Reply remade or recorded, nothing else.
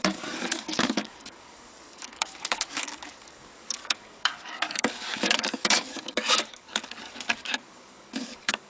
remade